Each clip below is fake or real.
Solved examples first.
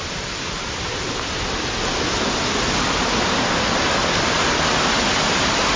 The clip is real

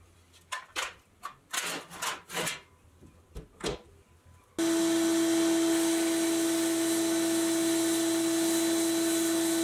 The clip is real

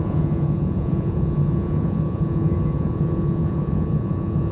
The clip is fake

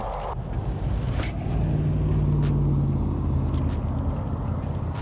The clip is real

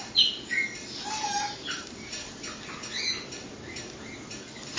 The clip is real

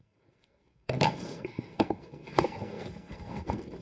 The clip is fake